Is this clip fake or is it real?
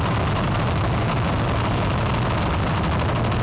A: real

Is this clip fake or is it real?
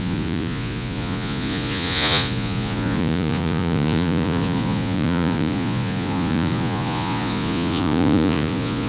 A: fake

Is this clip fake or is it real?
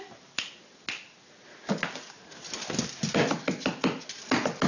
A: real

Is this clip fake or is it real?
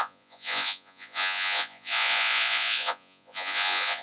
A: fake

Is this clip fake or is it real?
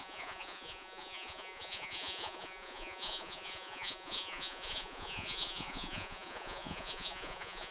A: fake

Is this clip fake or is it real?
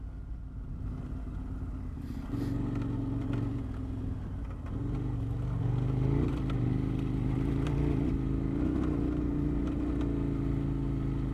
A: real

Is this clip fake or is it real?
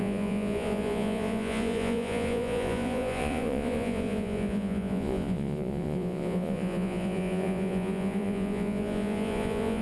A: fake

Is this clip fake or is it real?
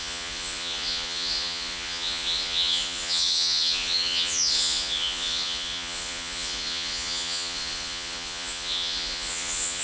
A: fake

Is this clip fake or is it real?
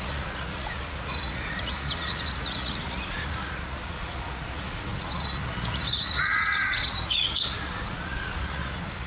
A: fake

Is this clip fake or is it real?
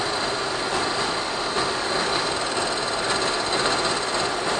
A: real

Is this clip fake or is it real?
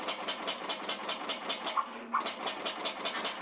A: real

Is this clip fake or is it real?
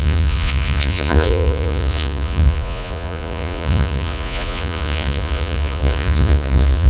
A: fake